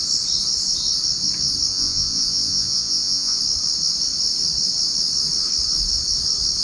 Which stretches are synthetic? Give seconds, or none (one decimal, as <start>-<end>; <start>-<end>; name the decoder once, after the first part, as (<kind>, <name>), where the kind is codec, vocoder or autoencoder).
1.7-3.4 (vocoder, Vocos)

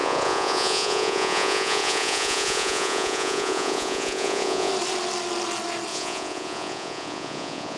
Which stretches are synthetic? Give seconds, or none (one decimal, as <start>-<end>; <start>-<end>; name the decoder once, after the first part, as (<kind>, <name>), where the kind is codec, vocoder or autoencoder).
0.0-4.7 (vocoder, Vocos); 5.9-7.8

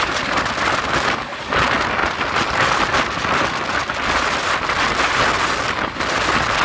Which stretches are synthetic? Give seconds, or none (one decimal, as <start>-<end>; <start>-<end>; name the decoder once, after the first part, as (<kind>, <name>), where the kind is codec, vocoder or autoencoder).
none

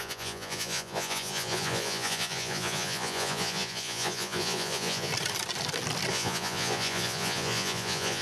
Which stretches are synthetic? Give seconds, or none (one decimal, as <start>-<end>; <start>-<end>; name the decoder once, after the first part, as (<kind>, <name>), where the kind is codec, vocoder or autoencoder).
0.0-5.1 (vocoder, Vocos); 6.1-8.2

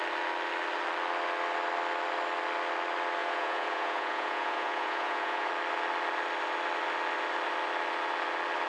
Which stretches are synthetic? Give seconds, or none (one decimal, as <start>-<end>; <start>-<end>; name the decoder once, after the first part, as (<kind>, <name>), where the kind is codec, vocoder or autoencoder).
3.2-5.5 (vocoder, Vocos)

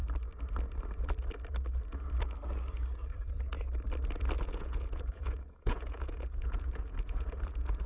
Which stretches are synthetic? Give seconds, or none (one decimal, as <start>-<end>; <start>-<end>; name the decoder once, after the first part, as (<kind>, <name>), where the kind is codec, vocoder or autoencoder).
4.4-7.9 (vocoder, Vocos)